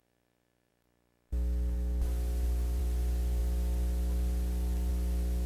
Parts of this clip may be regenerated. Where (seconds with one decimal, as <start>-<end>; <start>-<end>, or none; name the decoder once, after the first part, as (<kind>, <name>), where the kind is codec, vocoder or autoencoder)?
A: none